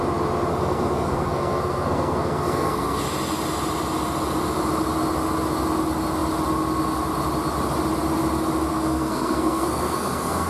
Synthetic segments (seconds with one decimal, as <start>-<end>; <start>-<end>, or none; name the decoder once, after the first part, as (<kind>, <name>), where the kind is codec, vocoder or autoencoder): 0.5-3.0 (codec, SNAC); 8.7-10.5